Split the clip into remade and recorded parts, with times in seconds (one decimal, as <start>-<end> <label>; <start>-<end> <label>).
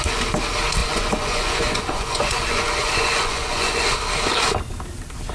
0.0-0.8 recorded; 0.8-4.0 remade; 4.0-5.3 recorded